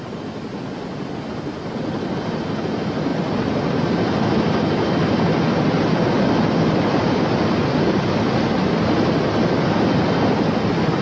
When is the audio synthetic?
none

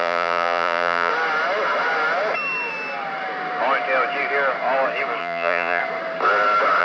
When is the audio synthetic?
0.0-1.1 (vocoder, Vocos); 5.2-5.8

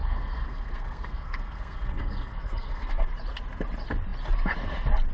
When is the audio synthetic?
0.0-3.1 (codec, SNAC)

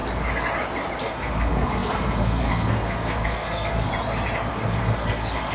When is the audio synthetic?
1.0-3.9 (codec, SNAC); 4.5-5.5

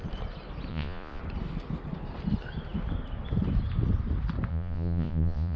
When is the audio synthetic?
0.7-1.2 (vocoder, Vocos); 4.5-5.6

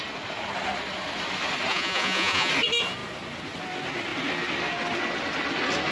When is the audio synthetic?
1.7-2.5 (vocoder, Vocos)